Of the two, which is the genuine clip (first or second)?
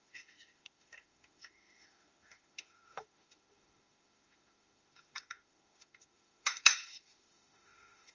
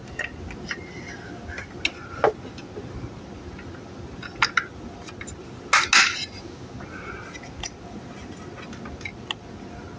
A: second